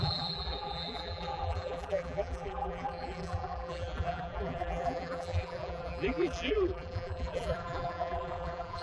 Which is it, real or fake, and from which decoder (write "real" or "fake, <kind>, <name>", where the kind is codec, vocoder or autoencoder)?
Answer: fake, vocoder, BigVGAN v2